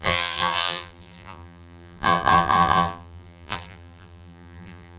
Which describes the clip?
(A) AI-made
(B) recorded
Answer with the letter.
A